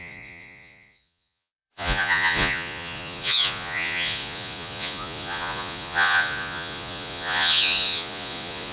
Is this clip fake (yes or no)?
yes